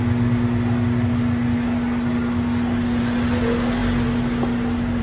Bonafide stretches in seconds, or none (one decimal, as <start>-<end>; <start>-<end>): 0.0-5.0